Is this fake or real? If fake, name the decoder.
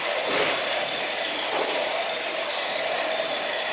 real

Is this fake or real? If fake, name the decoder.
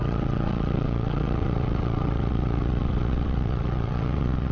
fake, vocoder, WaveNeXt